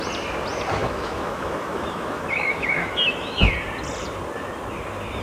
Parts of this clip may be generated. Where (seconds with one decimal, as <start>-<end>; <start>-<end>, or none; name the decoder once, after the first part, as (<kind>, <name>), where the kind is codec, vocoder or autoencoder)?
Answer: 0.8-3.5 (autoencoder, DAC-VAE)